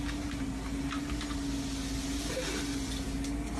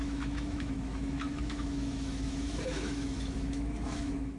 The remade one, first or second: second